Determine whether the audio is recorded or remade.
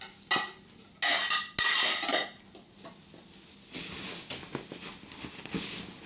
recorded